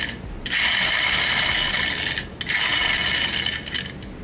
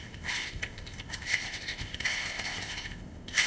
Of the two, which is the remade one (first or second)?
second